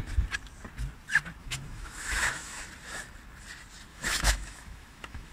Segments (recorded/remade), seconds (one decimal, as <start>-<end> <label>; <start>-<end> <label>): 0.0-1.4 recorded; 1.4-2.7 remade; 2.7-3.9 recorded; 3.9-5.3 remade